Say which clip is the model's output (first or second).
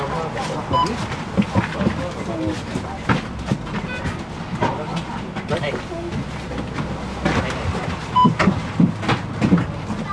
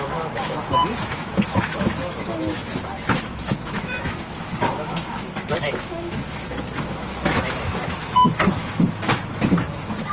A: second